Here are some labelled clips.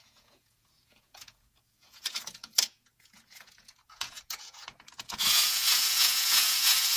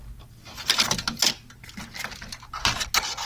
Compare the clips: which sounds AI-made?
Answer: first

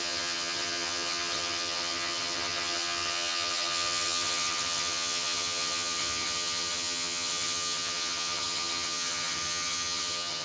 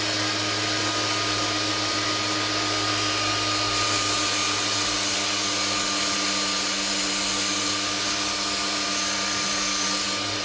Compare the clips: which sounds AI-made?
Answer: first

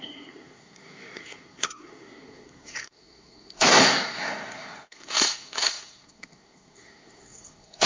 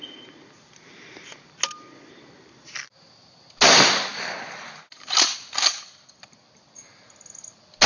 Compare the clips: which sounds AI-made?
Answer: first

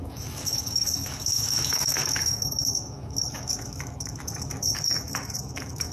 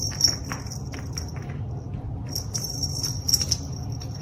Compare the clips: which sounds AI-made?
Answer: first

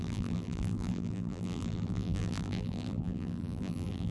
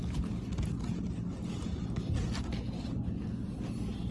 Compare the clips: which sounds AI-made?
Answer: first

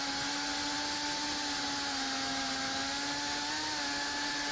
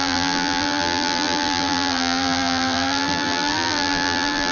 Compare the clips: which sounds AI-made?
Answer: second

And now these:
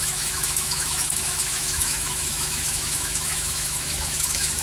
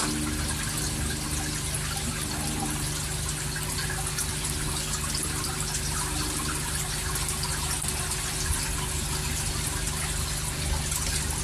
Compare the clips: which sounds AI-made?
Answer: first